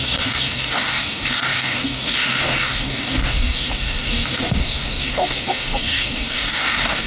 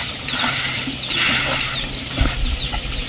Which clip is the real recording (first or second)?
second